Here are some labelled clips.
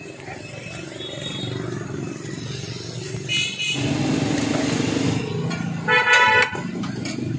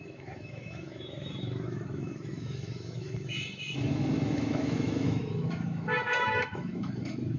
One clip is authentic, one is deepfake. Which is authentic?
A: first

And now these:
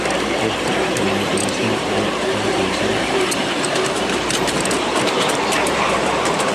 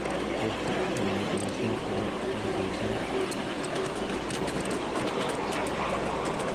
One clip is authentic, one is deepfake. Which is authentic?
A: second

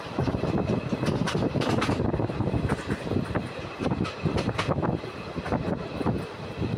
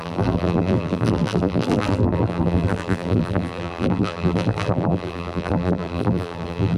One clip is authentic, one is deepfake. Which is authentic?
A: first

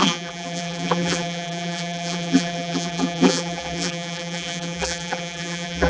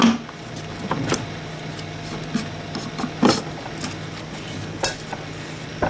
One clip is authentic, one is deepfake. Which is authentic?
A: second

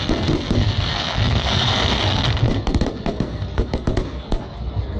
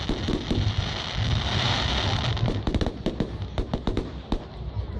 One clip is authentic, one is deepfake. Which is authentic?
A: second